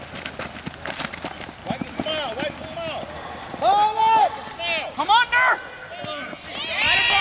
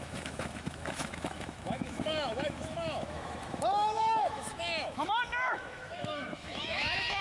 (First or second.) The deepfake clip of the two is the second